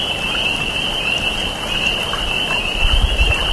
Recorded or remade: recorded